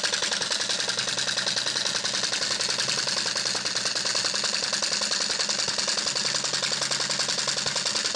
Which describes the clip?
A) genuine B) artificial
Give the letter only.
A